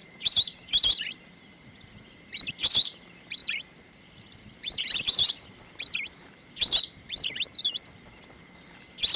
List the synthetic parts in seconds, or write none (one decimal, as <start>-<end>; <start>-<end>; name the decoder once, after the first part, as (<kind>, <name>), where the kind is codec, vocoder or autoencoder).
0.0-1.3 (vocoder, BigVGAN v2); 3.4-5.7